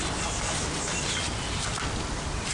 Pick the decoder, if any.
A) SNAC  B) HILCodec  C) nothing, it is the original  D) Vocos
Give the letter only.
C